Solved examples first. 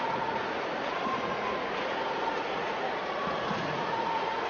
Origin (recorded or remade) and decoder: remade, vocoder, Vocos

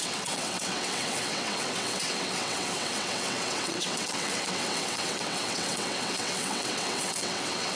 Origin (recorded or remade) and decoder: remade, vocoder, WaveNeXt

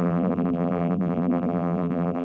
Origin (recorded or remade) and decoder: remade, vocoder, BigVGAN v2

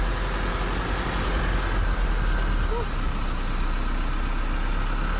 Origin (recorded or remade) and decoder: recorded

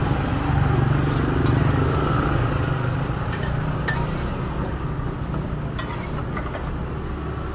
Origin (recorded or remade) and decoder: recorded